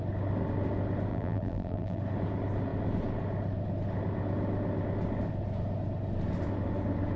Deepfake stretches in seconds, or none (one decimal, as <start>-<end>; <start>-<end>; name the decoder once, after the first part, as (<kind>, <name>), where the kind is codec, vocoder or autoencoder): 1.1-2.0 (vocoder, BigVGAN v2)